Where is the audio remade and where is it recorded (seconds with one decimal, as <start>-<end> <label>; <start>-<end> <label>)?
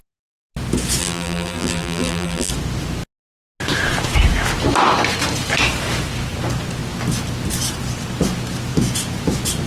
0.0-1.0 recorded; 1.0-2.5 remade; 2.5-9.7 recorded